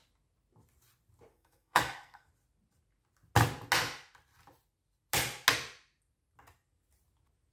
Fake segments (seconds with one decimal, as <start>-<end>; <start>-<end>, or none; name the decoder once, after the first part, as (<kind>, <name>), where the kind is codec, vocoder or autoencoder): 1.3-2.3 (codec, SNAC)